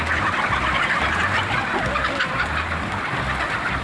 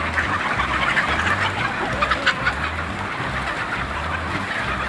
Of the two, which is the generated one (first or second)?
first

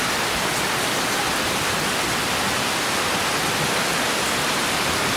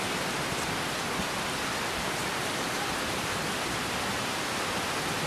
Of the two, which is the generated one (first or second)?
second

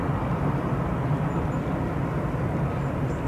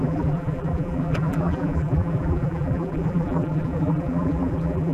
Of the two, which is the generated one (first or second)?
second